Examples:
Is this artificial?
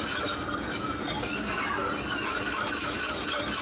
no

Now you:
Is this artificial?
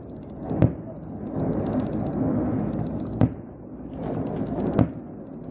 no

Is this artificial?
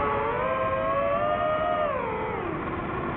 no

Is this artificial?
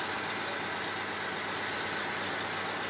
no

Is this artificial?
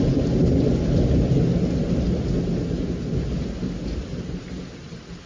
no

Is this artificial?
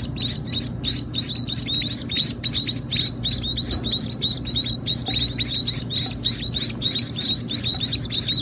no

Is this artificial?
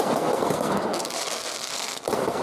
yes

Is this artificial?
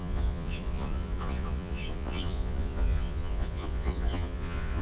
yes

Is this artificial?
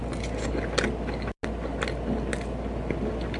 no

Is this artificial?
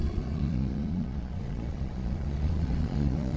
yes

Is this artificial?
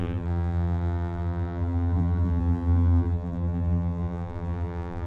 yes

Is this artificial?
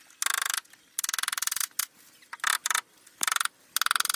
no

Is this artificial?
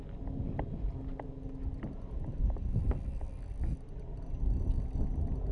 no